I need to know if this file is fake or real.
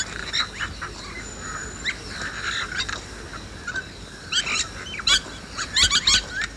real